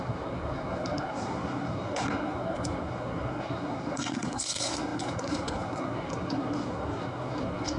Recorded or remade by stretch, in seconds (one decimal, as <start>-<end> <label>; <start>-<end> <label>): 0.0-7.8 remade